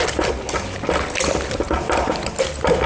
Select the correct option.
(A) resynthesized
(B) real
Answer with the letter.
B